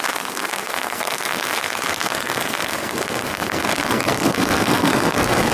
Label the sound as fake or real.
fake